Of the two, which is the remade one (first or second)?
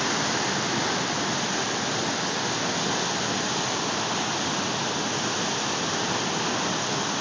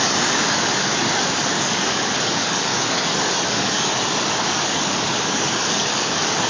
second